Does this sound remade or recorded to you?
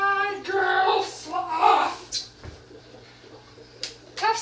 recorded